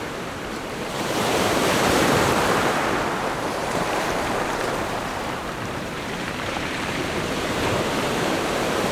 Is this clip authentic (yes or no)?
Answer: no